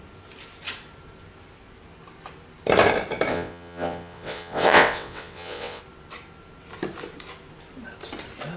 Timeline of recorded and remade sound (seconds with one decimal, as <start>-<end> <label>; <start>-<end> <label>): 0.0-3.3 recorded; 3.3-5.8 remade; 5.8-8.6 recorded